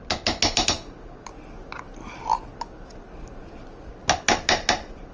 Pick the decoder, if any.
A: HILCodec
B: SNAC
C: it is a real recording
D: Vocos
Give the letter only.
C